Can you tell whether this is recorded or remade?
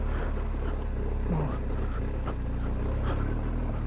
recorded